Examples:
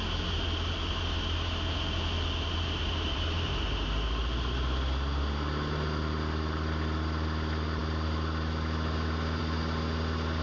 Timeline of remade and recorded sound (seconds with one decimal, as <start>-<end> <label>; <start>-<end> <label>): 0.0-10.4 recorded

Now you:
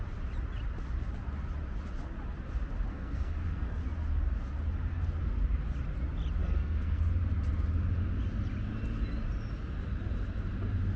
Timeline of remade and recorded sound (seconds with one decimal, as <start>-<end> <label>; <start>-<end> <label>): 0.0-2.9 recorded; 2.9-3.8 remade; 3.8-6.4 recorded; 6.4-7.0 remade; 7.0-11.0 recorded

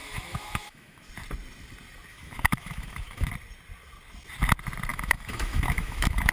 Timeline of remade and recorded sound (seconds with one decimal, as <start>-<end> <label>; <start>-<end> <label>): 0.0-1.1 remade; 1.1-2.1 recorded; 2.1-3.3 remade; 3.3-4.9 recorded; 4.9-6.3 remade

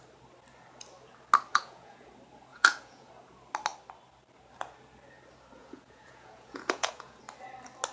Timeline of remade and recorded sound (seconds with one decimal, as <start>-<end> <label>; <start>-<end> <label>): 0.0-1.5 recorded; 1.5-2.1 remade; 2.1-2.5 recorded; 2.5-3.1 remade; 3.1-5.6 recorded; 5.6-7.2 remade; 7.2-7.9 recorded